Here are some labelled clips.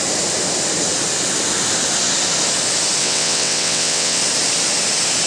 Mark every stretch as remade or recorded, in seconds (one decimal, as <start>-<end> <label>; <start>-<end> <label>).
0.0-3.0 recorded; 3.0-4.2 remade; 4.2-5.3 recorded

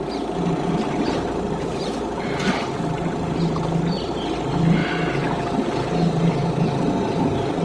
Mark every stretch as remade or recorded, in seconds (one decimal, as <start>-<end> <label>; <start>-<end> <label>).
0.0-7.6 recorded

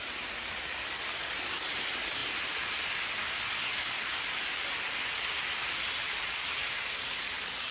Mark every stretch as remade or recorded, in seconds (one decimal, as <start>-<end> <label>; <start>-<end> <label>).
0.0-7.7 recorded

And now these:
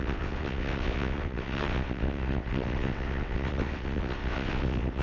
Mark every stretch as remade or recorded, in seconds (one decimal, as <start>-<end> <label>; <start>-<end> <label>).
0.0-5.0 remade

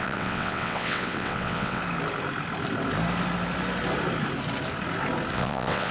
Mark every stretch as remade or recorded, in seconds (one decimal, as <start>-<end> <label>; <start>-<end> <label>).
0.0-1.8 remade; 1.8-5.3 recorded; 5.3-5.9 remade

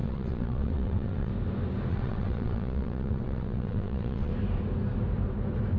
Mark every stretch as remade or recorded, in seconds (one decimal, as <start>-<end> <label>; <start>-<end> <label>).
0.0-1.3 remade; 1.3-1.9 recorded; 1.9-4.3 remade; 4.3-5.8 recorded

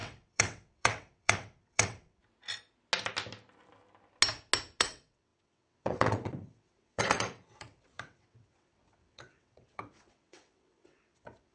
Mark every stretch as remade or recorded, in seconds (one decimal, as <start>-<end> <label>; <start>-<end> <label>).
0.0-2.2 remade; 2.2-4.8 recorded; 4.8-11.5 remade